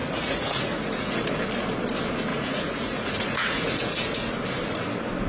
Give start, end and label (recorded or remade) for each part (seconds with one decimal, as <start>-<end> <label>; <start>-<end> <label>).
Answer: 0.0-1.4 remade; 1.4-2.3 recorded; 2.3-4.3 remade; 4.3-5.3 recorded